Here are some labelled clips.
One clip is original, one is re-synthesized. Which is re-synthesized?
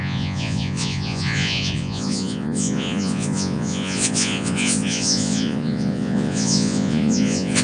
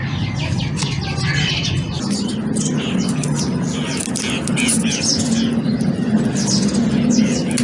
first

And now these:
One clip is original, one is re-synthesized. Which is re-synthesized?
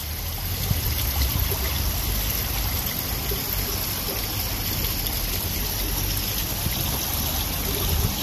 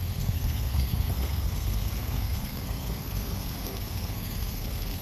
second